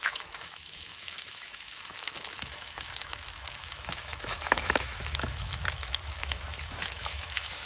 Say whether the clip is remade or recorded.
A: remade